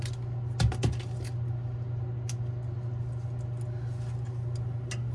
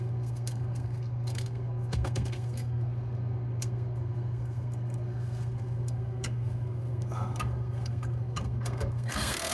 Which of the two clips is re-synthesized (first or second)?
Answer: second